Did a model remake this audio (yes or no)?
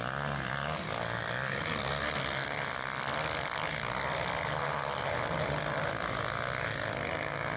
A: no